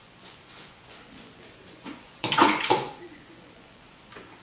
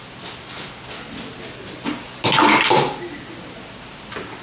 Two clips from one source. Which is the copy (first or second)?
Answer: first